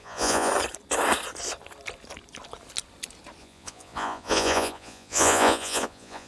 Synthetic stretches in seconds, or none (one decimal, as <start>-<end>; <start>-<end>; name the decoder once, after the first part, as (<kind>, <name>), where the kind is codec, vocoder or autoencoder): 0.0-0.5 (vocoder, Vocos); 3.4-6.3